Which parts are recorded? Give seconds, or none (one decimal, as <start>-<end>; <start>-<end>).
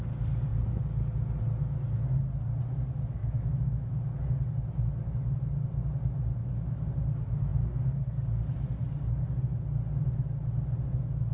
0.0-3.2; 3.9-6.4; 6.9-11.3